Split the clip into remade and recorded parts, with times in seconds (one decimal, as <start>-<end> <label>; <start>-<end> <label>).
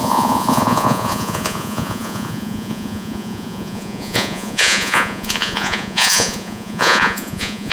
0.0-7.7 remade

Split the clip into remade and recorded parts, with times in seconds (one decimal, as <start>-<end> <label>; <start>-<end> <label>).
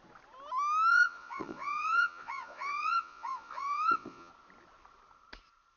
0.0-0.9 recorded; 0.9-4.3 remade; 4.3-5.8 recorded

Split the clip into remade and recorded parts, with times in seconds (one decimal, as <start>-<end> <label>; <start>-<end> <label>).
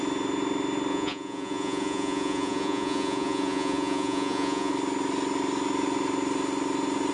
0.0-0.9 recorded; 0.9-4.7 remade; 4.7-7.1 recorded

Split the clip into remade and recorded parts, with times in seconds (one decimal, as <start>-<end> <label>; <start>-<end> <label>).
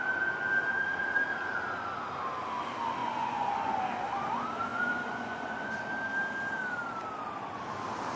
0.0-3.0 recorded; 3.0-3.8 remade; 3.8-4.7 recorded; 4.7-5.8 remade; 5.8-8.2 recorded